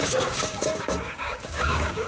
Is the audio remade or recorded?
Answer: remade